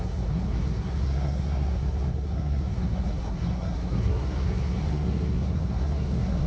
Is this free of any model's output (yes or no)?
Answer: no